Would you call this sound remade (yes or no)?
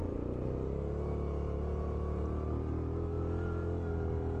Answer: no